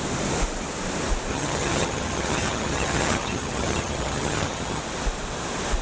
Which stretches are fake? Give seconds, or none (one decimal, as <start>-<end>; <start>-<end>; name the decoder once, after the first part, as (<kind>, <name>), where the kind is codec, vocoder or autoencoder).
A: 1.3-4.8 (vocoder, HiFi-GAN)